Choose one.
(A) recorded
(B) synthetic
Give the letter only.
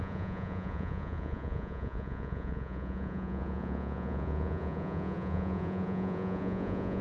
B